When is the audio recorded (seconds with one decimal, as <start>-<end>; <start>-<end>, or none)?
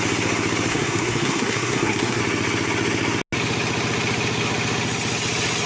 0.0-0.7; 2.2-5.7